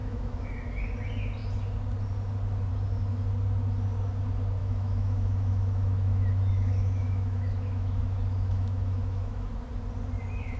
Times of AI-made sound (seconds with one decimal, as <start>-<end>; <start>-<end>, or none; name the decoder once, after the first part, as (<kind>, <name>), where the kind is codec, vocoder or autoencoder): 0.0-0.5 (autoencoder, DAC-VAE); 4.6-9.5